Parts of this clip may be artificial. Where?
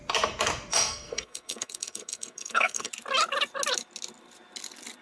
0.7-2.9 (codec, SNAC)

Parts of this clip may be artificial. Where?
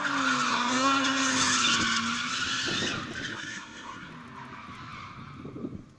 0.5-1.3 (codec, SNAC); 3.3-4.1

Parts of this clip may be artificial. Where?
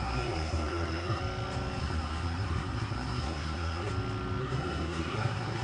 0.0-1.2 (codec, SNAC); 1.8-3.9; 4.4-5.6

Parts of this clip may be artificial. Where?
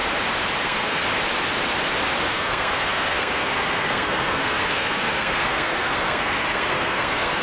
0.6-1.0 (codec, SNAC); 2.3-7.4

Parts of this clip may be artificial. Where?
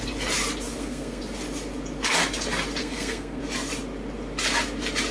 0.7-1.2 (codec, SNAC); 2.8-3.4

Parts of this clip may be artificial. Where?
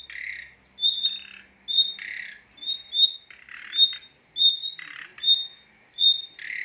none